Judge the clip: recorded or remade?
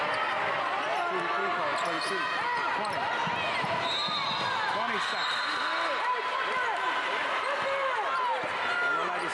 recorded